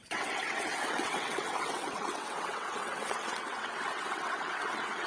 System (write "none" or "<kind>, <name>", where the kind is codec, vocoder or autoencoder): vocoder, WaveNeXt